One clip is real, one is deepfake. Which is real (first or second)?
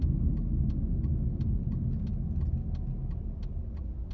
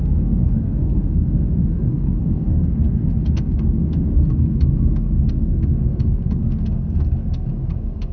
first